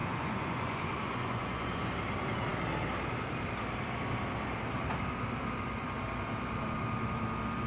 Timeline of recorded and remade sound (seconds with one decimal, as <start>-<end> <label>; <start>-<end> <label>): 0.0-1.9 remade; 1.9-7.7 recorded